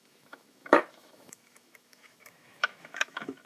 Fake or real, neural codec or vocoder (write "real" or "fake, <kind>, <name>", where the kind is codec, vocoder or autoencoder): fake, autoencoder, DAC-VAE